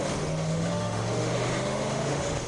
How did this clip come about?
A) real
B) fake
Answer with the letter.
B